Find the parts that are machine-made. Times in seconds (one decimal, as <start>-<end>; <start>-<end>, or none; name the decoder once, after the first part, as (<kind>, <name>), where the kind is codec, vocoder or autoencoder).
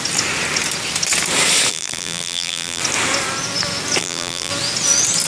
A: 1.7-2.8 (vocoder, BigVGAN v2); 4.0-4.5